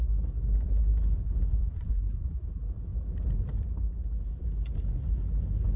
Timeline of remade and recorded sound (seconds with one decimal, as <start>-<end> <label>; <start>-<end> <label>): 0.0-1.5 recorded; 1.5-2.3 remade; 2.3-5.8 recorded